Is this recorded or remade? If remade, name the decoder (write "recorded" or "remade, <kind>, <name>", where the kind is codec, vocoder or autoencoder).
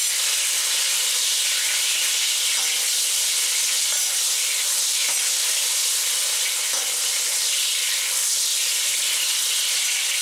recorded